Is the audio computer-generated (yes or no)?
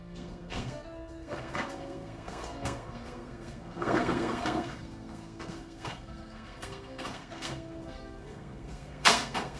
yes